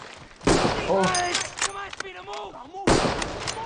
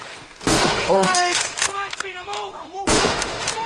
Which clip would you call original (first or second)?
first